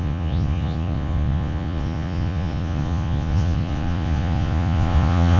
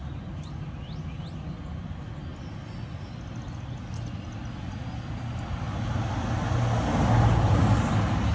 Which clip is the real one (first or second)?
second